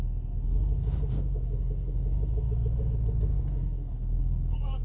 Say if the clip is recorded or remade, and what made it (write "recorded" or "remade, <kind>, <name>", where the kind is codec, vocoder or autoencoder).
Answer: remade, codec, SNAC